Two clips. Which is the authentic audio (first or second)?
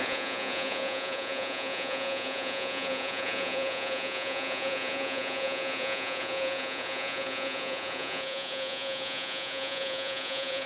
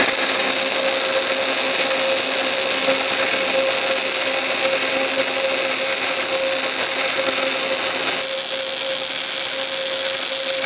second